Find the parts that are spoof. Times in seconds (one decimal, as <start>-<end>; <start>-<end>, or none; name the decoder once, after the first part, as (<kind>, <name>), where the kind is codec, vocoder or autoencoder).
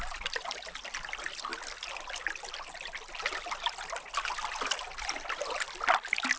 none